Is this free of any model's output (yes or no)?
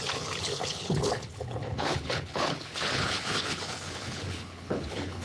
no